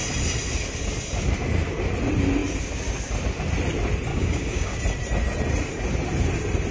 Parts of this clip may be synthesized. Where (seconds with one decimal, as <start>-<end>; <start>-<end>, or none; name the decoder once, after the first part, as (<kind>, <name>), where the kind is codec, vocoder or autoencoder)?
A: 4.1-4.8 (codec, DAC)